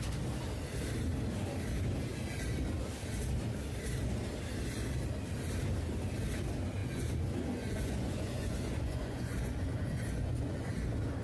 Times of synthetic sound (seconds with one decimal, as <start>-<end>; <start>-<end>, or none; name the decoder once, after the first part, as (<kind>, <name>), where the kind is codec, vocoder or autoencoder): 6.8-10.7 (vocoder, Vocos)